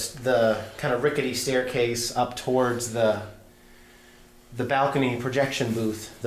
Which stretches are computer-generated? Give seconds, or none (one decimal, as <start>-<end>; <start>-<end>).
none